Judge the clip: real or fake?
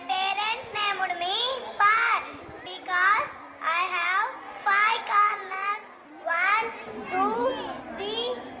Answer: real